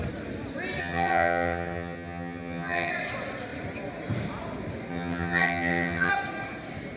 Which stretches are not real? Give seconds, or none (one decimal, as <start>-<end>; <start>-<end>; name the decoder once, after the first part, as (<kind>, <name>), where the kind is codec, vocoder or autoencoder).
0.8-2.9 (vocoder, HiFi-GAN); 4.9-6.1